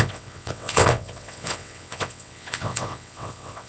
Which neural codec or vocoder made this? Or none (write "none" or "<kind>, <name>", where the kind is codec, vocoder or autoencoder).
vocoder, WaveNeXt